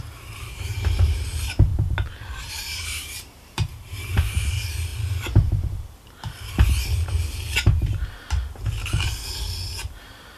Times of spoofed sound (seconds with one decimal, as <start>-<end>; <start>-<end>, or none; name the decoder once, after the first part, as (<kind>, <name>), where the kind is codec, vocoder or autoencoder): 0.0-1.7 (vocoder, BigVGAN v2); 2.3-4.9; 10.0-10.4